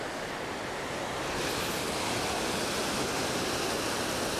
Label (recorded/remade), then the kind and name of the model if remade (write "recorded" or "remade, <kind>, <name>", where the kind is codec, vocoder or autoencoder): recorded